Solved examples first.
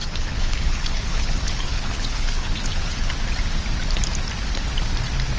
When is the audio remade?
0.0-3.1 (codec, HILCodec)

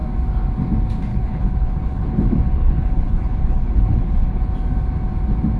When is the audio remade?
1.1-4.5 (codec, HILCodec)

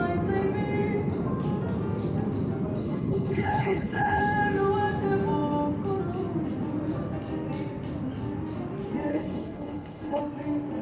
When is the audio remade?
2.8-4.2 (codec, HILCodec); 9.1-10.2

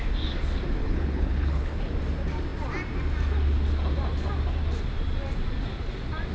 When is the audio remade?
0.8-1.8 (codec, HILCodec)

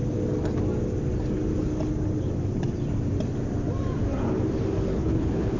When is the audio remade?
4.9-5.6 (codec, HILCodec)

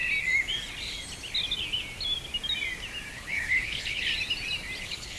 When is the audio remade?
3.1-4.1 (codec, HILCodec); 4.8-5.2

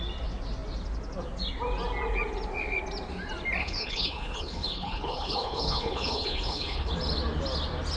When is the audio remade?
3.6-6.9 (codec, HILCodec)